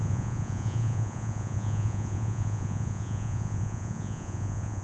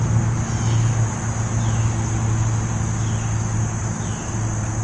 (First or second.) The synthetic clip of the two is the first